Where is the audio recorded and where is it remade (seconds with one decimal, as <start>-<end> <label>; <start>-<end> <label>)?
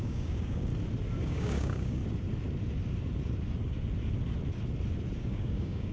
0.0-0.7 remade; 0.7-1.2 recorded; 1.2-2.0 remade; 2.0-5.2 recorded; 5.2-5.9 remade